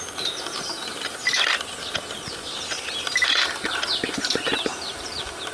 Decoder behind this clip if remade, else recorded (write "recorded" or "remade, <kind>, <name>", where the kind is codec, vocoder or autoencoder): recorded